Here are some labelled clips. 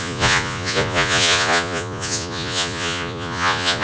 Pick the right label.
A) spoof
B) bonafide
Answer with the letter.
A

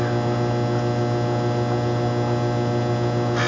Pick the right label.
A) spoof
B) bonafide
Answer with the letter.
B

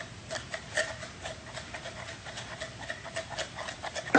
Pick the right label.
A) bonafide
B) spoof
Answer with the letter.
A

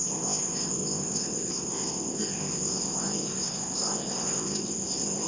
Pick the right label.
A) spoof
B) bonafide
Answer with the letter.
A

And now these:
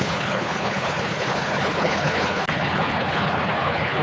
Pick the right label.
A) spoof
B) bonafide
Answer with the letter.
A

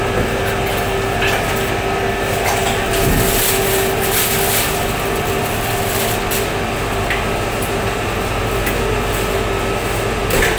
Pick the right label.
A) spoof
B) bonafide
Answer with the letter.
B